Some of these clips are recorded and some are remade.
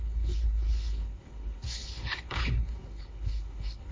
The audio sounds remade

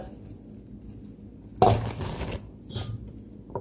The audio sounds recorded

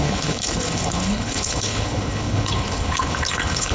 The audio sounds remade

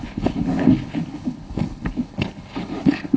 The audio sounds remade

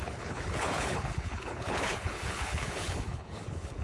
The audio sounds remade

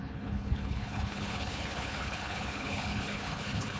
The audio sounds remade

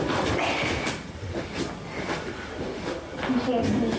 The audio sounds recorded